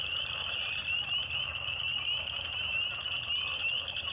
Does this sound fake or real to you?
real